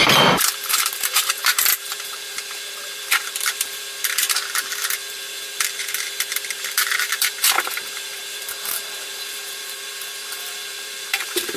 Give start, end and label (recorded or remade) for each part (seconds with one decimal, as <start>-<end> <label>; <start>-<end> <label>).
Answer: 0.0-11.6 remade